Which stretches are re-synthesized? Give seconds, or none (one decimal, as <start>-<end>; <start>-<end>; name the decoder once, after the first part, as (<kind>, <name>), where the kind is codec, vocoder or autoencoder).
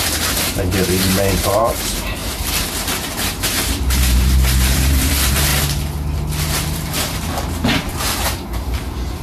0.0-5.5 (vocoder, BigVGAN v2); 6.4-9.2